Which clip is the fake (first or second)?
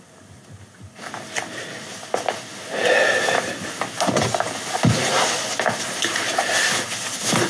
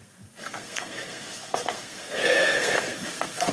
second